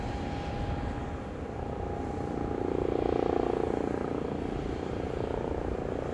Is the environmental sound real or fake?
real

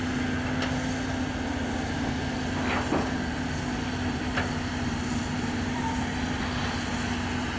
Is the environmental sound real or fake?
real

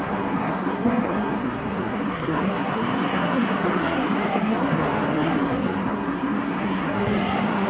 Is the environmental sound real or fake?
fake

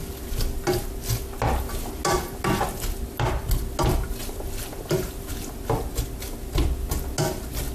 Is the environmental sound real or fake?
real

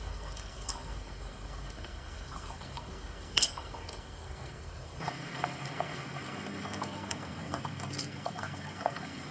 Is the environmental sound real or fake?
fake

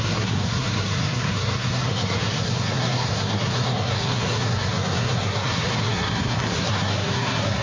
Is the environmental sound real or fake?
fake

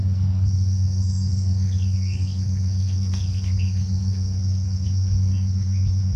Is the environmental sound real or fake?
fake